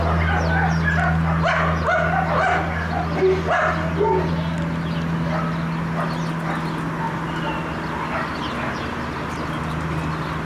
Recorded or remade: recorded